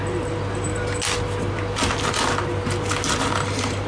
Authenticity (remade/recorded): recorded